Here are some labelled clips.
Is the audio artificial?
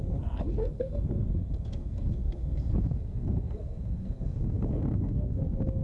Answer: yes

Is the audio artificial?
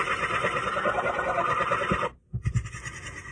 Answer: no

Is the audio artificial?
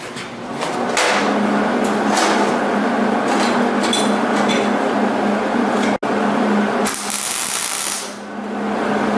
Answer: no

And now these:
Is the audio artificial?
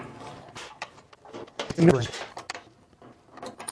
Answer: no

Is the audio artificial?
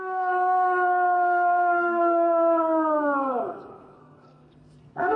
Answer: yes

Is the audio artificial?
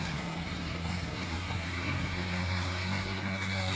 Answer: yes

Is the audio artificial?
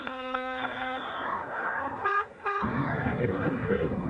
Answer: yes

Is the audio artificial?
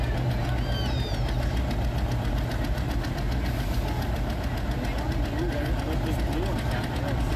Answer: no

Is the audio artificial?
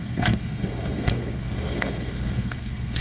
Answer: yes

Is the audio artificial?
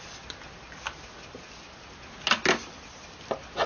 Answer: no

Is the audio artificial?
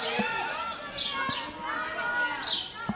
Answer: no